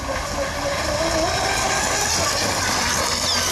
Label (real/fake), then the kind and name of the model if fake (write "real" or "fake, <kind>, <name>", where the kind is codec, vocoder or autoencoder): real